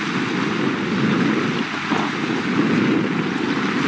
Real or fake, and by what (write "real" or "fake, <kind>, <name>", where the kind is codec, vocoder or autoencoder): real